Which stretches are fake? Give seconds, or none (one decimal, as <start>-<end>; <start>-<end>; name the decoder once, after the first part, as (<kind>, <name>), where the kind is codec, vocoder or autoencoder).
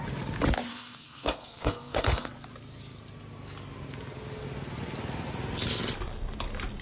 0.7-2.3 (codec, SNAC)